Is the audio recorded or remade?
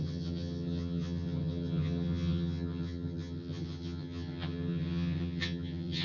remade